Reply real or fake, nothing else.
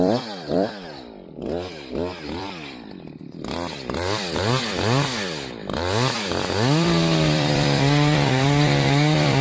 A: fake